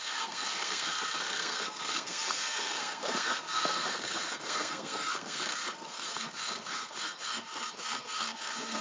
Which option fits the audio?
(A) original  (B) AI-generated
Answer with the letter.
B